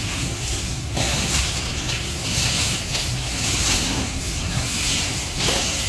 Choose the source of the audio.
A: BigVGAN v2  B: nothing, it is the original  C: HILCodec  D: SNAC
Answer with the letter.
D